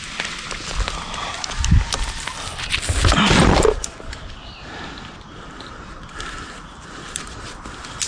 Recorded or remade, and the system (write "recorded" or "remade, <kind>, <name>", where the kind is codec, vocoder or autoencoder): recorded